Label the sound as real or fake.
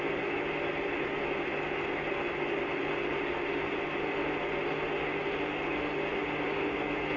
real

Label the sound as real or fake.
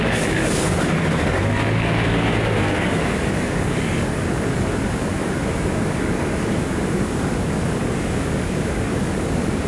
fake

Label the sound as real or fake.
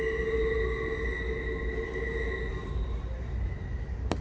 real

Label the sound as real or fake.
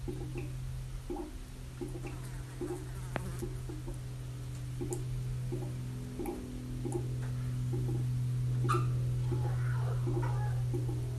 real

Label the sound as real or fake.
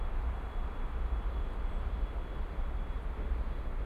real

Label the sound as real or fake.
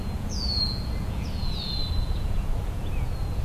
fake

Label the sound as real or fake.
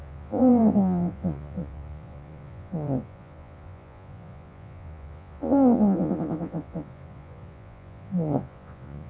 fake